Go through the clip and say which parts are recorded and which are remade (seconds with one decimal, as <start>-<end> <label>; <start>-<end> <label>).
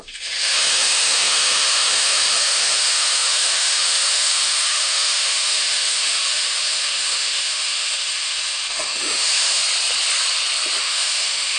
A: 0.0-9.6 remade; 9.6-10.8 recorded; 10.8-11.6 remade